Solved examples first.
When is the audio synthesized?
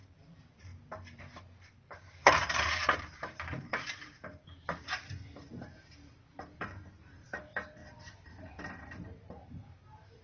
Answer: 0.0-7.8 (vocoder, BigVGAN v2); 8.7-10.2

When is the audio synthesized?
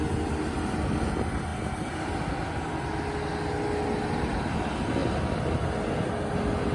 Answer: none